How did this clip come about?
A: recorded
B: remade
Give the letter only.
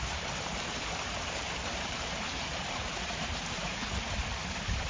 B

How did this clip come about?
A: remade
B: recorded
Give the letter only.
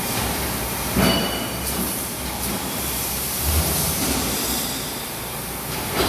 A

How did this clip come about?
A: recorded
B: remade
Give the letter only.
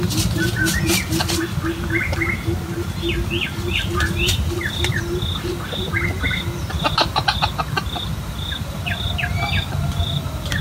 A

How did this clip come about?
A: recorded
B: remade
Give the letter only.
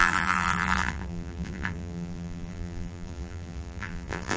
B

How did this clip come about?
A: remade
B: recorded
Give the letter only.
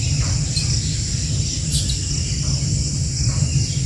B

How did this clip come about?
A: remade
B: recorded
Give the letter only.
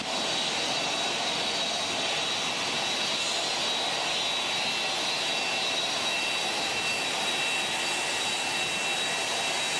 B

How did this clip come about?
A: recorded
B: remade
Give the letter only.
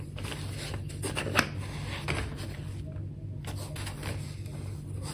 A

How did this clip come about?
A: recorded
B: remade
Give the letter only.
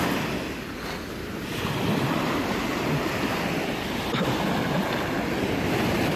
A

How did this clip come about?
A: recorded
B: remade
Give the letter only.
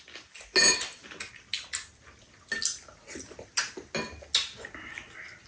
A